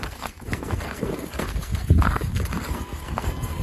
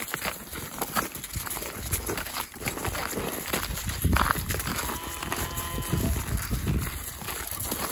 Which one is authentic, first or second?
second